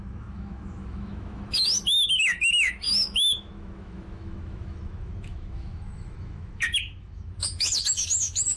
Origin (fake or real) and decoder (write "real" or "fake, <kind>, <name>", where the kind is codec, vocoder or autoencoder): fake, autoencoder, DAC-VAE